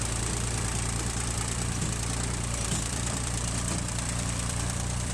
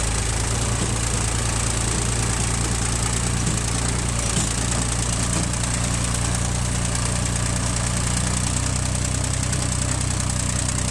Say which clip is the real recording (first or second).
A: second